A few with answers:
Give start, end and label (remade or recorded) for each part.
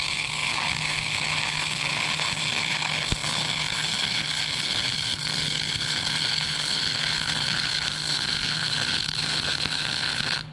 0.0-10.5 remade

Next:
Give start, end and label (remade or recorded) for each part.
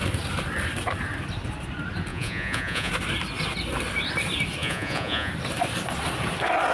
0.0-2.1 recorded; 2.1-2.9 remade; 2.9-4.6 recorded; 4.6-5.3 remade; 5.3-6.7 recorded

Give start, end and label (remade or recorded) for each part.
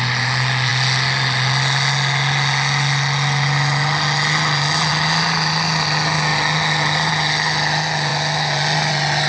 0.0-9.3 recorded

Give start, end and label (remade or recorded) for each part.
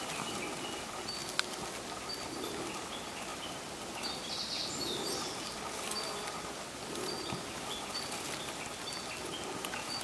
0.0-10.0 recorded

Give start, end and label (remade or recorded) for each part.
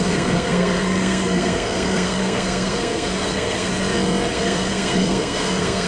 0.0-3.7 remade; 3.7-4.3 recorded; 4.3-5.9 remade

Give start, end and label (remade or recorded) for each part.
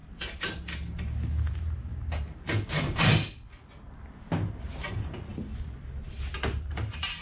0.0-1.5 recorded; 1.5-1.9 remade; 1.9-4.6 recorded; 4.6-5.3 remade; 5.3-6.3 recorded; 6.3-7.2 remade